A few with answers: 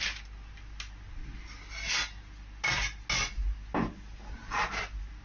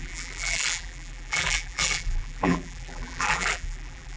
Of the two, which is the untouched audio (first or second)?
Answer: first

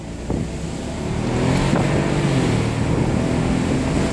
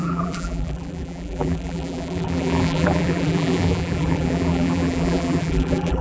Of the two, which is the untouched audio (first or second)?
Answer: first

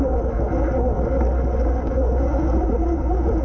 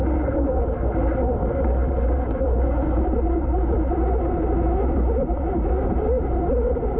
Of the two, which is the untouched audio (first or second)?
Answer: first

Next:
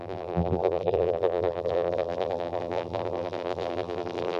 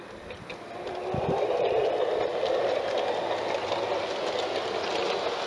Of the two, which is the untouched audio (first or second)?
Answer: second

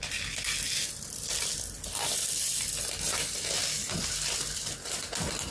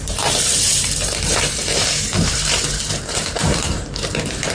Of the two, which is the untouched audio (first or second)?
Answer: first